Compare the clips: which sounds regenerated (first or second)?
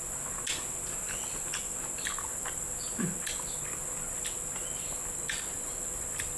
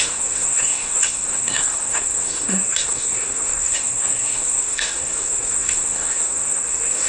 second